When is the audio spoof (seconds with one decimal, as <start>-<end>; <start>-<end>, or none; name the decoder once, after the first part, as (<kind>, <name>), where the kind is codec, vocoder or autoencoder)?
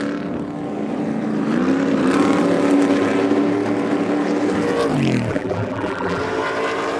5.3-6.2 (vocoder, BigVGAN v2)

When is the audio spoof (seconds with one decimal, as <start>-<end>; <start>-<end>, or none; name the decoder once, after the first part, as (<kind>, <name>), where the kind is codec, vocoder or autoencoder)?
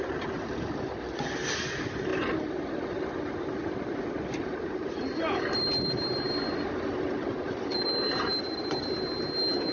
none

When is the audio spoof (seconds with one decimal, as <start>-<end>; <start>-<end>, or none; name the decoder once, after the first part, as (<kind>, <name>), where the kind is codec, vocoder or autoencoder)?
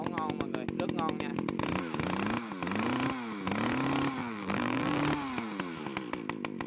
4.2-5.0 (vocoder, BigVGAN v2)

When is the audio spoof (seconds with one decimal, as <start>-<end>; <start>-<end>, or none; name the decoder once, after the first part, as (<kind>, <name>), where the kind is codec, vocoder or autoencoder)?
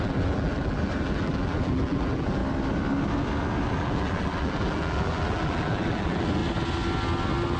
0.0-2.4 (vocoder, BigVGAN v2); 3.7-6.4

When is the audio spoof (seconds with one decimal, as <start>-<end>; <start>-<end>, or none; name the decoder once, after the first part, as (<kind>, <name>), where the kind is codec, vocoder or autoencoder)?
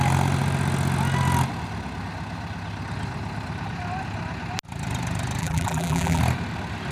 5.4-6.2 (vocoder, BigVGAN v2)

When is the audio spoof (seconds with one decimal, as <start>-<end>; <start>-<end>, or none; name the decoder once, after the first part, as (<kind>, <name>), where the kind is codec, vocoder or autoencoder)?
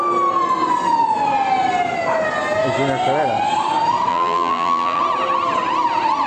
4.1-5.0 (vocoder, BigVGAN v2)